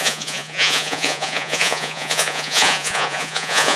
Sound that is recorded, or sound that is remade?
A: remade